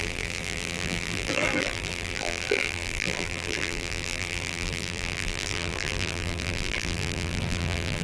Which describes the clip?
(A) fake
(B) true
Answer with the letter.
A